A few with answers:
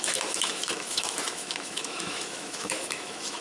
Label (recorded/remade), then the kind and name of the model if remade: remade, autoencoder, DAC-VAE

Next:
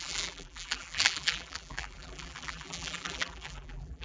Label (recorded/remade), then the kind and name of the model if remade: remade, vocoder, BigVGAN v2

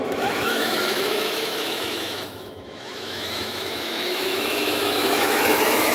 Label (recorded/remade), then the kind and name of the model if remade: remade, autoencoder, DAC-VAE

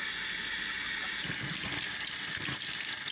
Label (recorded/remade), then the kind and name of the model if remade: recorded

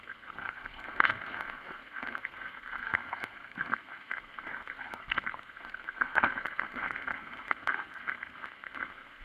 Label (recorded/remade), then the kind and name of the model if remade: remade, codec, SNAC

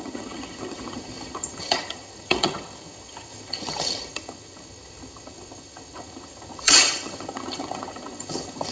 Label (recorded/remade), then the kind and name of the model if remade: remade, vocoder, HiFi-GAN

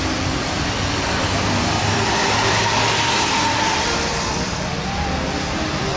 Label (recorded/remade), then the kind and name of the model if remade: remade, vocoder, BigVGAN v2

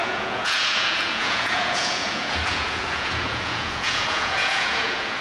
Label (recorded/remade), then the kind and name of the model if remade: remade, vocoder, Vocos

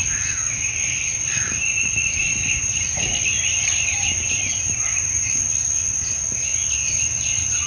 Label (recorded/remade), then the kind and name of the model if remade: recorded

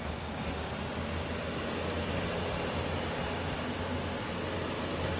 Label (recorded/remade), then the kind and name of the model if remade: recorded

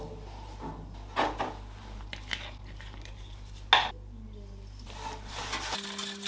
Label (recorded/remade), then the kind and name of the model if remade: recorded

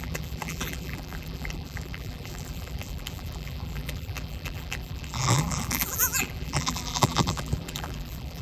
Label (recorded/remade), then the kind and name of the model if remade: remade, vocoder, BigVGAN v2